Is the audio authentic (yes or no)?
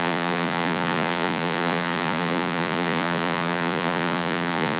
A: no